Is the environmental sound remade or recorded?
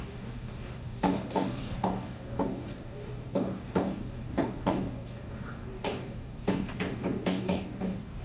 remade